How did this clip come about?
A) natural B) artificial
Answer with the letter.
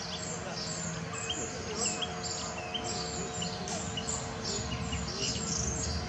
A